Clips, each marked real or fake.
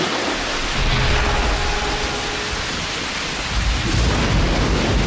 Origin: real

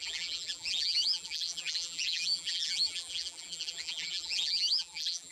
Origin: fake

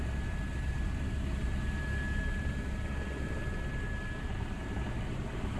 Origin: fake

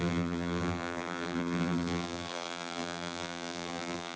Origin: fake